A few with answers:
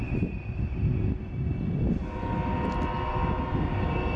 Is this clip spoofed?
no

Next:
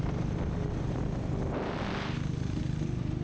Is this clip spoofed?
no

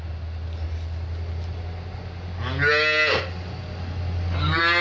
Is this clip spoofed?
no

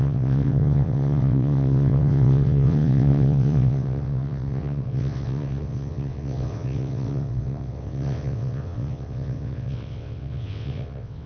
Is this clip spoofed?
yes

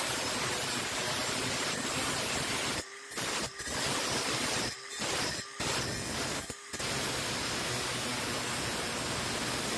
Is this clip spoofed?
no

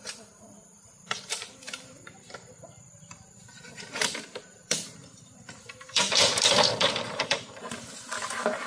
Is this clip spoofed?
yes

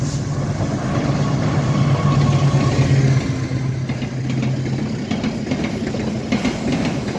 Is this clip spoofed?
no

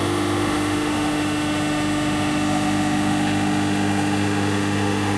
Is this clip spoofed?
yes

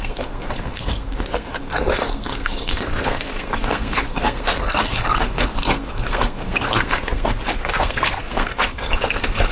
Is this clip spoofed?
yes